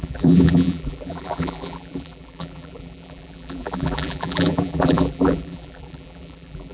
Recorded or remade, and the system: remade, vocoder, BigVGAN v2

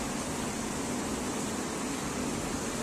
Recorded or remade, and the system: recorded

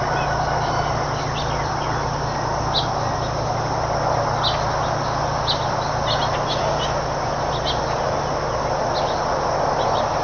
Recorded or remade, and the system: recorded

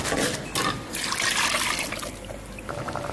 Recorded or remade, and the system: recorded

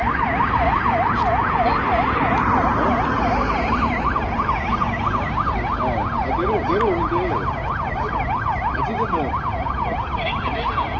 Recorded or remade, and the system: recorded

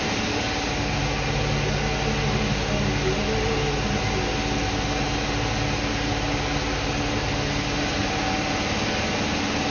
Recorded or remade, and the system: recorded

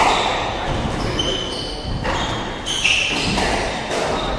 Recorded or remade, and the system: recorded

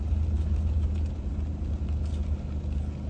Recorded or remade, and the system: recorded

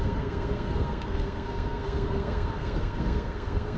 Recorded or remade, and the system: remade, codec, SNAC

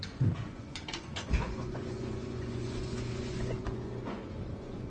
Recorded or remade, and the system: remade, vocoder, Vocos